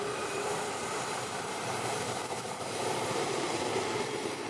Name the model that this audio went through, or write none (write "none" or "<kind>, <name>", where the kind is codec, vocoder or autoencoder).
vocoder, BigVGAN v2